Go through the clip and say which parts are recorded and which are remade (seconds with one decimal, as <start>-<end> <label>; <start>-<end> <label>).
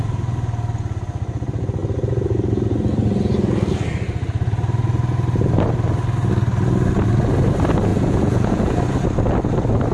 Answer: 0.0-7.9 recorded; 7.9-8.8 remade; 8.8-9.9 recorded